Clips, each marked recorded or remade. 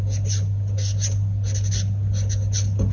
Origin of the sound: recorded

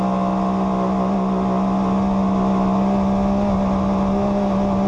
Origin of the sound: recorded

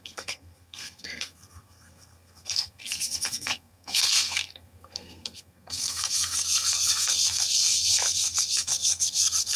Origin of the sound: remade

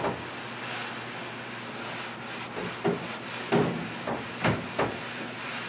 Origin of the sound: recorded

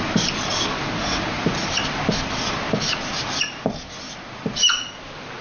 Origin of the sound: recorded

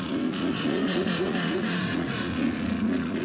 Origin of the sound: remade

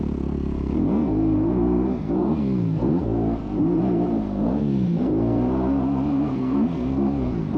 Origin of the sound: remade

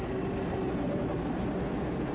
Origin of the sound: recorded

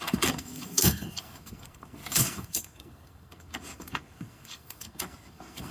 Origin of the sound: remade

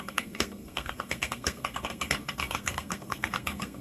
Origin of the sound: remade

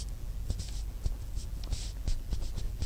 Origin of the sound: recorded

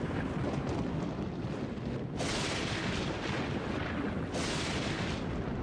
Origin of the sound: recorded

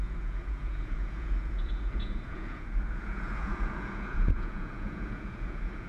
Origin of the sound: remade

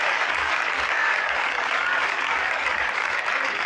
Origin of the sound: remade